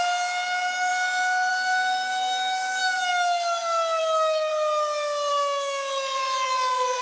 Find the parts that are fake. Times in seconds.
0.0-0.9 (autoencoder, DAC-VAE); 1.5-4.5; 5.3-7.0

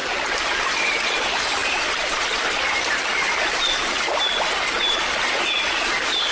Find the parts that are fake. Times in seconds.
none

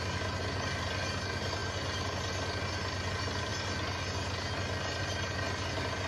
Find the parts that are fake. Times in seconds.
none

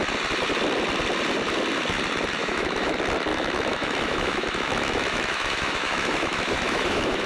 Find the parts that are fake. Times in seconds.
2.4-2.9 (autoencoder, DAC-VAE); 3.3-7.3

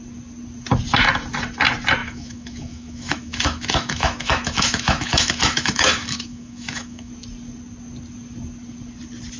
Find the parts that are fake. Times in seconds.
2.0-7.1 (autoencoder, DAC-VAE)

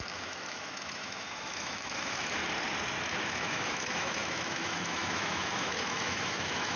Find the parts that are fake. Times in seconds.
0.0-2.4 (autoencoder, DAC-VAE); 3.0-6.8